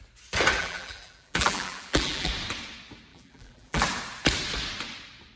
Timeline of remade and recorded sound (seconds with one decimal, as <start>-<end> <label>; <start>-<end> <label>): 0.0-0.6 recorded; 0.6-2.3 remade; 2.3-3.1 recorded; 3.1-3.8 remade; 3.8-5.4 recorded